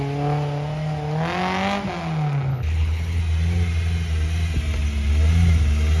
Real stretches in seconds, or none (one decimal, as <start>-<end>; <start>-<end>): 0.0-2.5; 3.2-6.0